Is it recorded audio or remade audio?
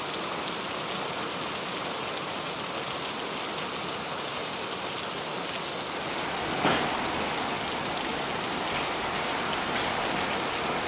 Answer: recorded